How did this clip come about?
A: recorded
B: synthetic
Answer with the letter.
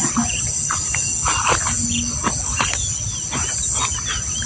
A